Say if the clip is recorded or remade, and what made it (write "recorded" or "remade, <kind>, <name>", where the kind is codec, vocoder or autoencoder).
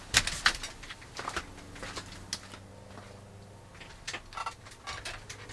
recorded